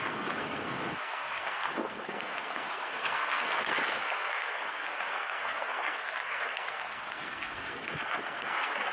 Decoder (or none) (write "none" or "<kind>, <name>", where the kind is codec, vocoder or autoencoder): codec, SNAC